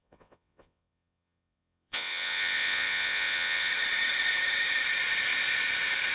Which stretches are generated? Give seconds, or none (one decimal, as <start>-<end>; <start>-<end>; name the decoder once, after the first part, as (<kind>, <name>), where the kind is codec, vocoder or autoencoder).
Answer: 0.0-3.7 (vocoder, WaveNeXt)

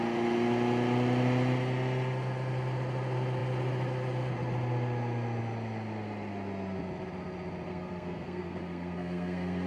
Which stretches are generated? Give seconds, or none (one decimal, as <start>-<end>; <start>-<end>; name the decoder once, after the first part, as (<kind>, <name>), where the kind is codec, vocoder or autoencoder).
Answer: 7.7-9.7 (codec, SNAC)

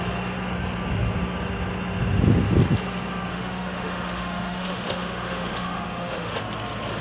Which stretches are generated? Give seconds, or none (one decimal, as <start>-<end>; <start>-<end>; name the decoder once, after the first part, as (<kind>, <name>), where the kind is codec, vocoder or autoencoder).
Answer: 3.3-6.4 (autoencoder, DAC-VAE)

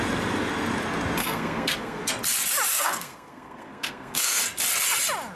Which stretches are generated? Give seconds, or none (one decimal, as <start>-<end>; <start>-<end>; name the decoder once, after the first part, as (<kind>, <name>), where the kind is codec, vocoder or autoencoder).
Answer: 1.2-2.0 (codec, SNAC); 2.7-4.4

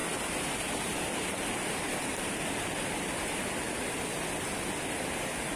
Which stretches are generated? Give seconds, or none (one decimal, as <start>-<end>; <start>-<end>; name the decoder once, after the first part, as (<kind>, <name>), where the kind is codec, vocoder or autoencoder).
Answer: none

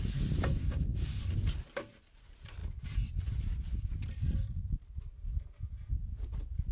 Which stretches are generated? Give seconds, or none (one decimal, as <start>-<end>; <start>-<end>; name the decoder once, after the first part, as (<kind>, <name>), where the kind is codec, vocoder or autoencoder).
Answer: 0.6-1.2 (codec, DAC)

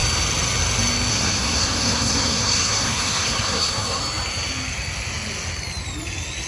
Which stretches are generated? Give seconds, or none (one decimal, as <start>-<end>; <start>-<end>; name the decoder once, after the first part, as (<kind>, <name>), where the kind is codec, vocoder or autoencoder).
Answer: 1.1-4.0 (codec, SNAC)

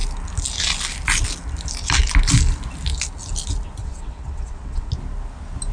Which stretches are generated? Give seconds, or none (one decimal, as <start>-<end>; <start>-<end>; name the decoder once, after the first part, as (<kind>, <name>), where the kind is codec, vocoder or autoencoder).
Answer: 3.8-4.9 (vocoder, WaveNeXt)